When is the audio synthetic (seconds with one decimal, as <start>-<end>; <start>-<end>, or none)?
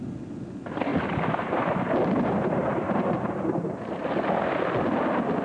0.9-4.1